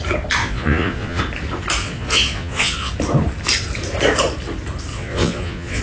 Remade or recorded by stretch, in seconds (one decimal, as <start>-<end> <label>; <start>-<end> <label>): 0.0-0.4 recorded; 0.4-1.2 remade; 1.2-1.8 recorded; 1.8-2.9 remade; 2.9-4.9 recorded; 4.9-5.8 remade